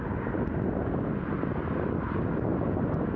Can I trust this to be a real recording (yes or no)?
yes